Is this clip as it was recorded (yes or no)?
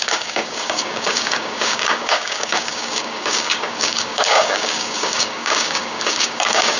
no